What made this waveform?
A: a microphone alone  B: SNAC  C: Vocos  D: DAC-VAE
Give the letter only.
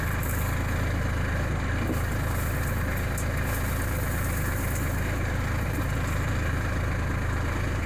A